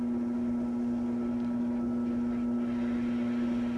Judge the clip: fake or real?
real